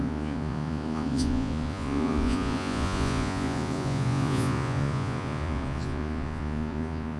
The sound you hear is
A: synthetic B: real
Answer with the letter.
A